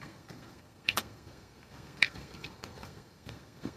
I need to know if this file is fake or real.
fake